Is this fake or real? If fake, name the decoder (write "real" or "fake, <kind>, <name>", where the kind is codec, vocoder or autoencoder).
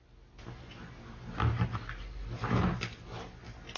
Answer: real